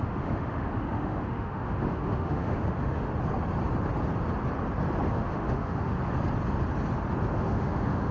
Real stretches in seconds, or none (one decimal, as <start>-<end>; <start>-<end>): 3.1-5.1; 6.0-7.3